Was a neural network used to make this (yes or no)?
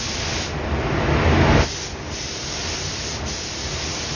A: no